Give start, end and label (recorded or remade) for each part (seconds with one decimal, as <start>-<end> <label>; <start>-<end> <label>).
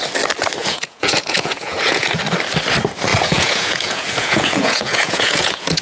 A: 0.0-0.6 recorded; 0.6-2.2 remade; 2.2-3.1 recorded; 3.1-5.8 remade